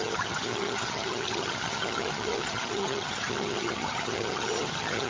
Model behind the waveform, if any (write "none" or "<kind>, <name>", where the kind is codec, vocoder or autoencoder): vocoder, HiFi-GAN